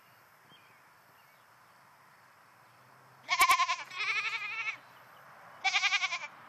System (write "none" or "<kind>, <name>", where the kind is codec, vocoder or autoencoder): none